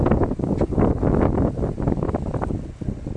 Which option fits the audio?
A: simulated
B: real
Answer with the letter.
B